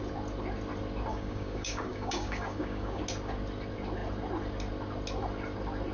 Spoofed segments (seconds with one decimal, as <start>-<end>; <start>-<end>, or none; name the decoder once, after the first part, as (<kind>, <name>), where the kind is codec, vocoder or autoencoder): 1.1-3.0 (codec, DAC)